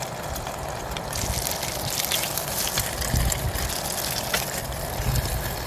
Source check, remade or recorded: recorded